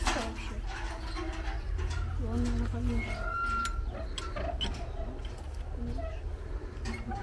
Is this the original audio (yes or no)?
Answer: yes